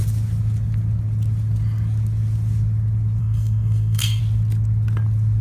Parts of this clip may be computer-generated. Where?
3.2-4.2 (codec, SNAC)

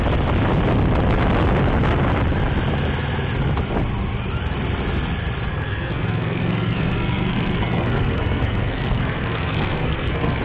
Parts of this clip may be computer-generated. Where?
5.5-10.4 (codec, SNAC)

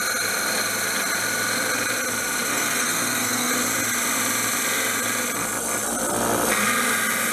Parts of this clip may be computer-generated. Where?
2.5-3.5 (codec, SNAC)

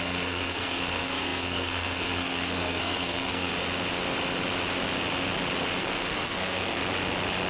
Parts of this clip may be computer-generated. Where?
0.0-3.5 (codec, SNAC); 5.8-6.8

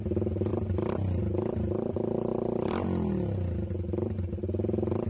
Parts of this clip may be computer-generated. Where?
none

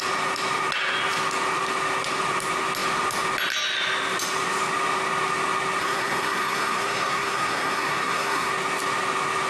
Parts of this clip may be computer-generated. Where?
5.8-8.5 (codec, SNAC)

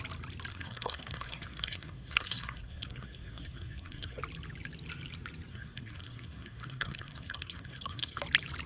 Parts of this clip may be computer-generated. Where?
0.5-4.2 (codec, SNAC); 5.5-8.2

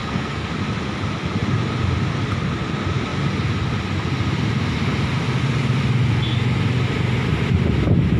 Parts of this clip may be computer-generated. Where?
0.0-0.5 (codec, SNAC)